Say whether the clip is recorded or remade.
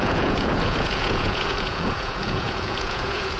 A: remade